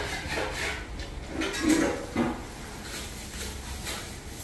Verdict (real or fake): real